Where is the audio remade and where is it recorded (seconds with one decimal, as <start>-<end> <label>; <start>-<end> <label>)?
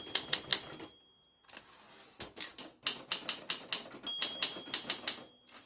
0.0-5.7 recorded